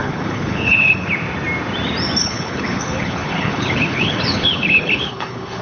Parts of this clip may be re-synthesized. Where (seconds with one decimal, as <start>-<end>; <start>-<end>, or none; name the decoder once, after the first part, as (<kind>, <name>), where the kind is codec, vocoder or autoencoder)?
0.0-1.1 (codec, HILCodec); 2.2-5.6